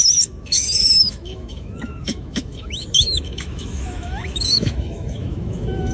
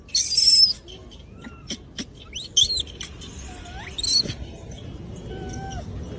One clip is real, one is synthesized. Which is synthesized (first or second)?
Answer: first